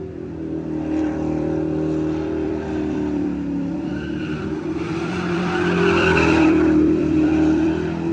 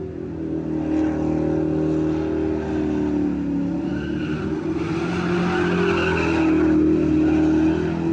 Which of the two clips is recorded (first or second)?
second